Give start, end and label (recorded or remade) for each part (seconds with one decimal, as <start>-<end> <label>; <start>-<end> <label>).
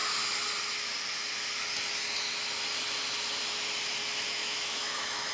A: 0.0-4.0 recorded; 4.0-5.3 remade